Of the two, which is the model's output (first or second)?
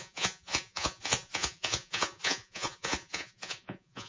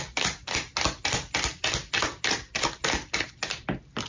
first